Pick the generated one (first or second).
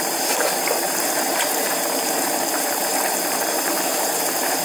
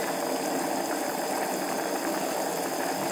first